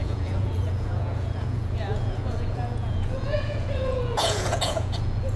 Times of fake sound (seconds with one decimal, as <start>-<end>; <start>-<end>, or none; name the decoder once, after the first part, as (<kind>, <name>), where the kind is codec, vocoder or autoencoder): 0.0-5.4 (vocoder, Vocos)